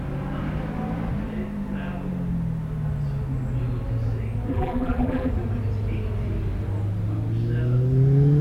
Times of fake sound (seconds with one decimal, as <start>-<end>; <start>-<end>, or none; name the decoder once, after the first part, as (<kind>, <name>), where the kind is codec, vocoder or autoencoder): 4.5-5.3 (vocoder, BigVGAN v2)